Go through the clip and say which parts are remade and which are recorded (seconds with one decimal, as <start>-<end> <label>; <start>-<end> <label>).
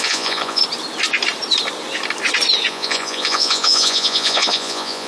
0.0-0.6 remade; 0.6-2.7 recorded; 2.7-5.1 remade